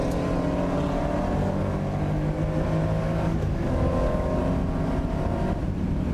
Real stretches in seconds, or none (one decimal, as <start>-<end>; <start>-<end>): 0.0-1.4; 2.4-2.9; 4.4-6.1